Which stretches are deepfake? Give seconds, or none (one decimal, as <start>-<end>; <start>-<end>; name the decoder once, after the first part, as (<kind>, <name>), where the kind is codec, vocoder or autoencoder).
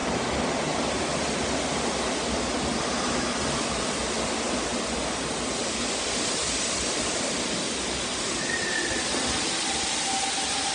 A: none